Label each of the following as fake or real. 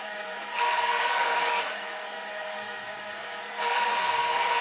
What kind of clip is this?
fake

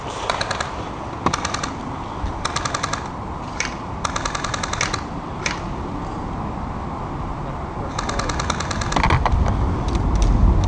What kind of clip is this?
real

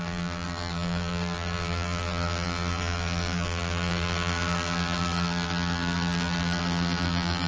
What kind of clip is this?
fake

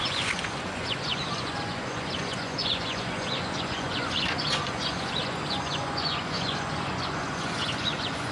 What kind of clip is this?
fake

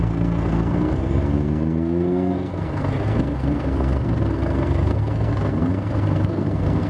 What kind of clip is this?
fake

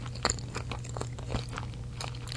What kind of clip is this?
real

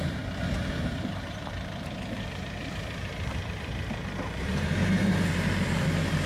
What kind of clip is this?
fake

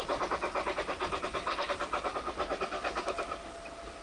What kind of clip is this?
real